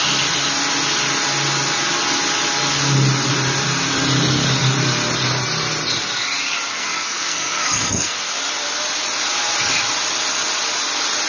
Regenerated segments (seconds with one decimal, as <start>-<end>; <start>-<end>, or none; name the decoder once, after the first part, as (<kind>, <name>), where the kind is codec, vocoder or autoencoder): 6.8-8.2 (codec, SNAC)